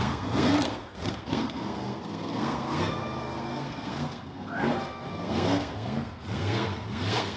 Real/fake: fake